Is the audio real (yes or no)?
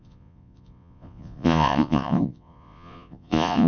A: no